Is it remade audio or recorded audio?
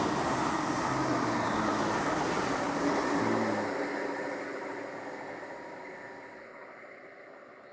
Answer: recorded